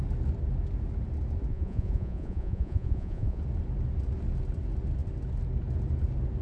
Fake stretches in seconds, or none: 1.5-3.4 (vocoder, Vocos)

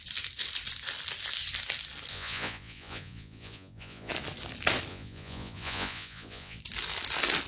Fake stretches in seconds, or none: 2.1-4.1 (vocoder, Vocos); 4.9-6.6

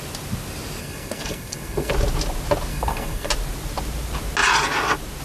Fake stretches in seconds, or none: 0.8-1.9 (codec, SNAC); 2.7-3.3